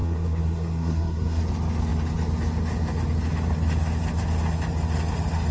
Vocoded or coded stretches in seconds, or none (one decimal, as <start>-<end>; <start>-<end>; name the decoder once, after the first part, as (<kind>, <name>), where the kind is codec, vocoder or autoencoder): 0.0-1.4 (codec, SNAC)